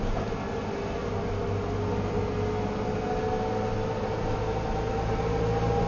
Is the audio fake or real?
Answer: real